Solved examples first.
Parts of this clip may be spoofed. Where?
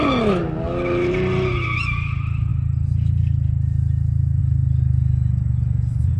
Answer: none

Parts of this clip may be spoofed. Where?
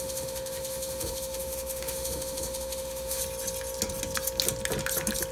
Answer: 0.0-3.2 (autoencoder, DAC-VAE)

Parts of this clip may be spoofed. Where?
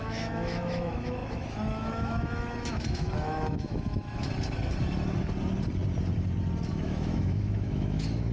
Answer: 0.0-4.2 (autoencoder, DAC-VAE); 6.7-8.3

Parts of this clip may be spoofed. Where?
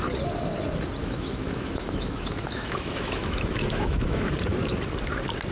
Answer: 1.0-4.3 (autoencoder, DAC-VAE)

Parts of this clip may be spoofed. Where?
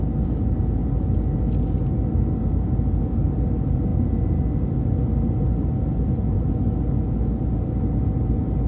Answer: none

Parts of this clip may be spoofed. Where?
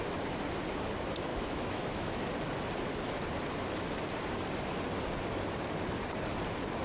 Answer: 1.3-2.2 (autoencoder, DAC-VAE)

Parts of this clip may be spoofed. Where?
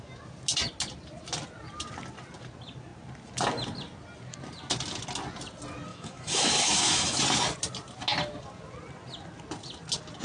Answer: 5.9-7.2 (autoencoder, DAC-VAE)